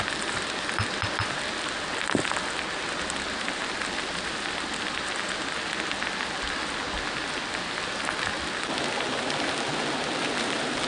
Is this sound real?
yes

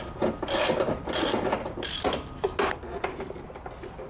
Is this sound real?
yes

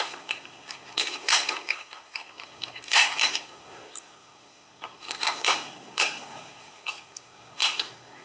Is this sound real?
no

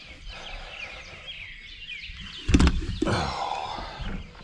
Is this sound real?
yes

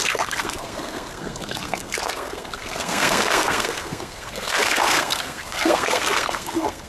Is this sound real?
no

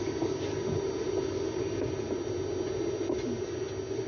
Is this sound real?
yes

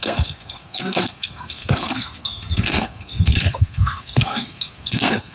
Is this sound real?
no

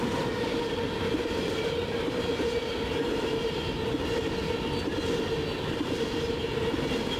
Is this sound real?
yes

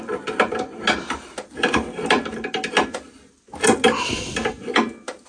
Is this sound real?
yes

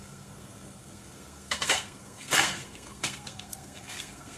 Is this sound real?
no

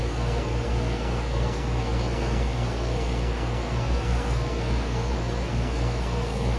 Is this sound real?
no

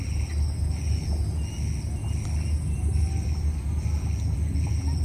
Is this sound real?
yes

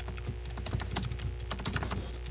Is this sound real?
yes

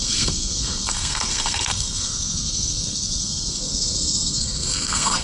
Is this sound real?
no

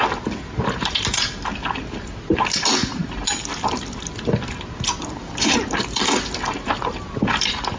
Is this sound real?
yes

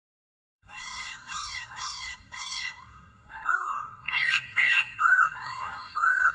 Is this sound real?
no